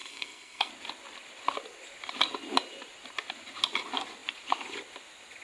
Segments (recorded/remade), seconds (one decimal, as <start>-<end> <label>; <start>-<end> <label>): 0.0-0.7 remade; 0.7-5.4 recorded